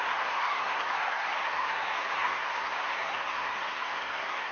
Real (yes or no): no